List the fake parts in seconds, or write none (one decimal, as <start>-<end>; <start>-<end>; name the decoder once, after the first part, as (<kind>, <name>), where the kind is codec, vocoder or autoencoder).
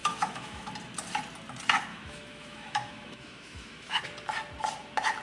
0.0-0.7 (autoencoder, DAC-VAE); 1.9-4.0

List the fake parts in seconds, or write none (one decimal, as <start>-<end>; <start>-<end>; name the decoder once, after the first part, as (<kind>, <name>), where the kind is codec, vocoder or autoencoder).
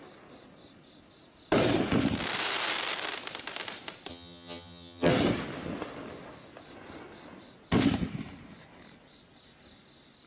4.1-5.1 (vocoder, HiFi-GAN)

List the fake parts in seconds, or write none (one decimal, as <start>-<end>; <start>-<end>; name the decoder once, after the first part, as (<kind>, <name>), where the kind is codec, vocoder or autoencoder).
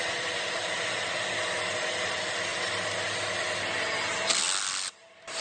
none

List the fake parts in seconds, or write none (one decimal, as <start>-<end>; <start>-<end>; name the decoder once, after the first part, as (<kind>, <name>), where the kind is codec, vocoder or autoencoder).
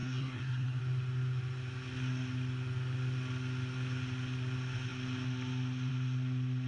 0.0-0.8 (codec, SNAC)